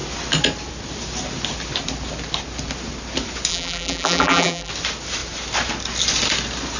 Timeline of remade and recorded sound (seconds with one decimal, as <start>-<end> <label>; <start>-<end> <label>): 0.0-3.5 recorded; 3.5-4.7 remade; 4.7-6.8 recorded